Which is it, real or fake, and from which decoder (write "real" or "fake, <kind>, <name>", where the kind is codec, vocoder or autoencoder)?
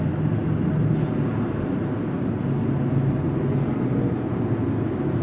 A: real